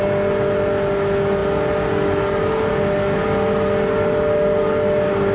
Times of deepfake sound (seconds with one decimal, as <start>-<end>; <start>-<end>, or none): none